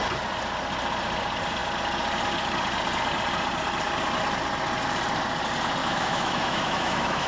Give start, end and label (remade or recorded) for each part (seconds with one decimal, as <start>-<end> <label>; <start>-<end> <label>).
0.0-5.8 recorded; 5.8-7.3 remade